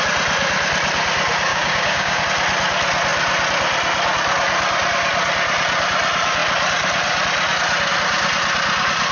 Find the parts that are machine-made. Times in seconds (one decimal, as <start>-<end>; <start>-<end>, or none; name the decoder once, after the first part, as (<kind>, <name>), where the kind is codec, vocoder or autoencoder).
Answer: 1.5-2.2 (codec, DAC)

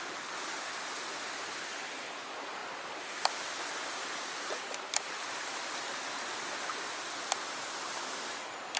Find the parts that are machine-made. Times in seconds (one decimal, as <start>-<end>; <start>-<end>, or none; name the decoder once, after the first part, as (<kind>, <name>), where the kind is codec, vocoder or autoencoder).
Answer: none

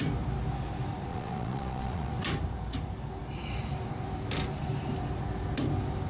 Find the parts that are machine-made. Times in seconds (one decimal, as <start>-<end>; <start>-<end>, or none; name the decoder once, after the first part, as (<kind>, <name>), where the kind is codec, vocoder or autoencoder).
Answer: 1.1-2.1 (vocoder, Vocos)

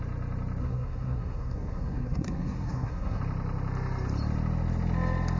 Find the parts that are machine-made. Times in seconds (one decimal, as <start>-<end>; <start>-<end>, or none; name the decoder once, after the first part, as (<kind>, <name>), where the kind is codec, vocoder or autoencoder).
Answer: 0.6-3.2 (codec, SNAC)

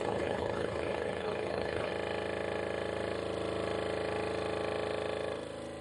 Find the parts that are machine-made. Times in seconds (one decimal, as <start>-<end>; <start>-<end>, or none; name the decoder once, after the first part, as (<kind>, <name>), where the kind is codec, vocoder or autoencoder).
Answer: 0.0-1.9 (codec, HILCodec)

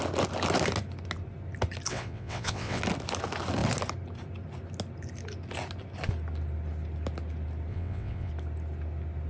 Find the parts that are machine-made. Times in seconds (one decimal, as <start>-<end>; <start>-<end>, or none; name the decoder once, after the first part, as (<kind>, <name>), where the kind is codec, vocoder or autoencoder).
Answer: 1.9-2.8 (vocoder, WaveNeXt); 7.7-8.3

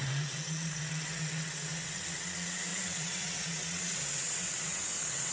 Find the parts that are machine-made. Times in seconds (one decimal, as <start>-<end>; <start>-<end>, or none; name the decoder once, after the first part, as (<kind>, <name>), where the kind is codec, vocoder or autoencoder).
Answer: 0.0-5.3 (vocoder, WaveNeXt)

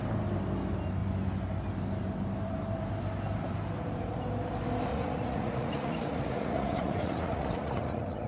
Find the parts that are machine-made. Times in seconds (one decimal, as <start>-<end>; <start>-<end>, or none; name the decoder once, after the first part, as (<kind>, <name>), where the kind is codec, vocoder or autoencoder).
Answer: 4.9-8.3 (vocoder, Vocos)